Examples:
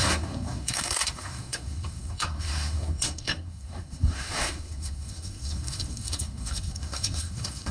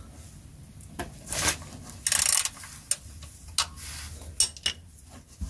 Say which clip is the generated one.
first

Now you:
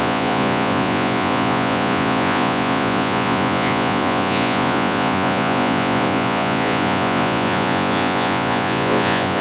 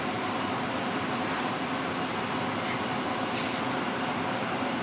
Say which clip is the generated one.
first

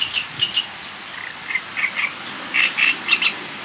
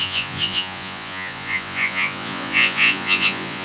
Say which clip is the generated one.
second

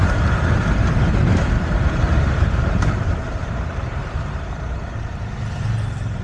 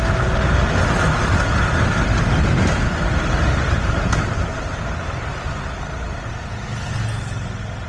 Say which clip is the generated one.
first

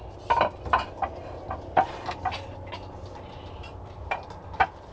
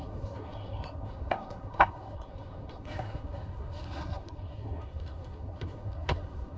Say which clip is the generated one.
second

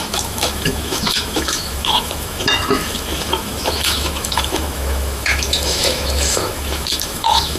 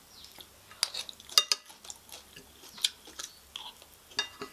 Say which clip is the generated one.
first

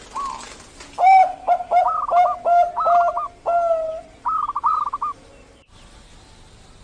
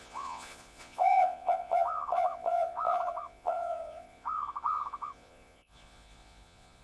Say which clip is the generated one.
second